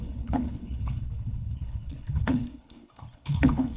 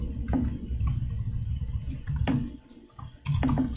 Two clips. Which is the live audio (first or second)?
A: second